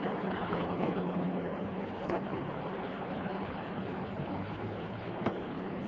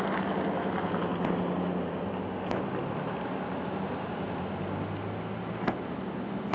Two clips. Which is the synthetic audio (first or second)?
first